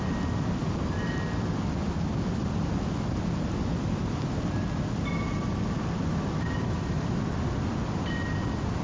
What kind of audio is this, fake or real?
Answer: real